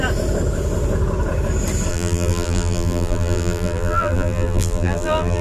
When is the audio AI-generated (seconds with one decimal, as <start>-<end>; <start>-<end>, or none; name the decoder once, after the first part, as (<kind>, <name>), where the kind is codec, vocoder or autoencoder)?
1.9-5.4 (vocoder, BigVGAN v2)